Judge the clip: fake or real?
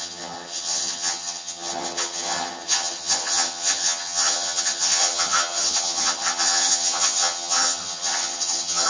fake